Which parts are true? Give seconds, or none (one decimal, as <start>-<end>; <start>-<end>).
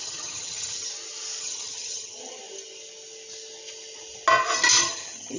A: 0.9-1.4; 2.2-4.8